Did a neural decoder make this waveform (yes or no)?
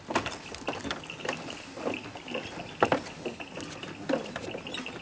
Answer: no